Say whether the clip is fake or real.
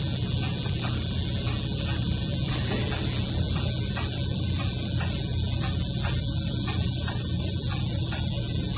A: real